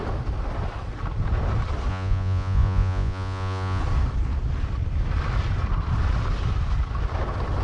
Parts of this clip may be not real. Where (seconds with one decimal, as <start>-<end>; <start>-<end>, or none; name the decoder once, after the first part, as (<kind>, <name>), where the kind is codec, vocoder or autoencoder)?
1.9-3.8 (vocoder, Vocos)